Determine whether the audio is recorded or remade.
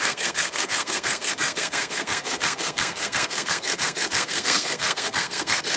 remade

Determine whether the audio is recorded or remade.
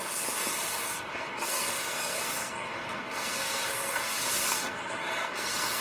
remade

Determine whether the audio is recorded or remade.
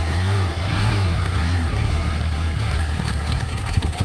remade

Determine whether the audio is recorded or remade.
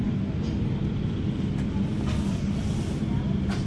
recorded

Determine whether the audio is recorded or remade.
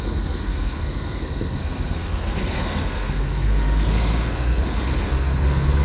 remade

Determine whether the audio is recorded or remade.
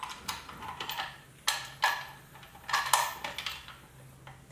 recorded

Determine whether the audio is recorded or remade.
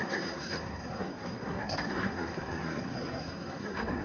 remade